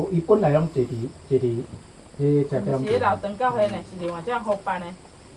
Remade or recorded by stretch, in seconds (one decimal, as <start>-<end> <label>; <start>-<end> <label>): 0.0-5.4 recorded